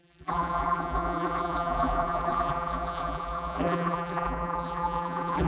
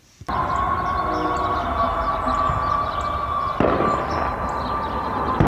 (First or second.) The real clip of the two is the second